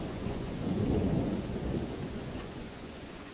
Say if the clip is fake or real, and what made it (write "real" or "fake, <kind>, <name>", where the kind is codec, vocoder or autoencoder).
fake, vocoder, Vocos